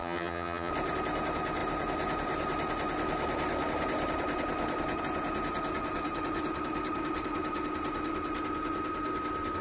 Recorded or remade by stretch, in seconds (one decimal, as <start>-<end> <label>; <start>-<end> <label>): 0.0-0.7 remade; 0.7-9.6 recorded